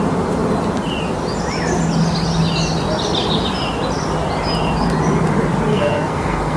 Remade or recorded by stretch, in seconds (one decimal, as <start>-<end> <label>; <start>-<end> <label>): 0.0-5.7 recorded; 5.7-6.6 remade